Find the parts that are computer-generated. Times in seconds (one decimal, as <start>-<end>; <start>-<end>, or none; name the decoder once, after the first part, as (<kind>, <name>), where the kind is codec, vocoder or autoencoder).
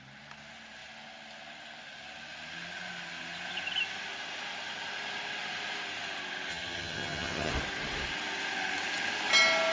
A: 6.5-7.5 (vocoder, HiFi-GAN)